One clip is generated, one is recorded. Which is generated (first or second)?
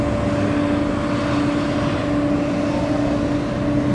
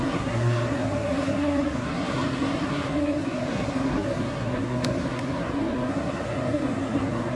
second